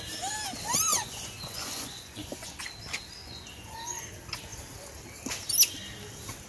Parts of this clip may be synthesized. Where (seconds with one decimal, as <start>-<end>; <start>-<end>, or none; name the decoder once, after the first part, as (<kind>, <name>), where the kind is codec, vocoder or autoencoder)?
0.9-2.6 (vocoder, Vocos); 3.2-4.0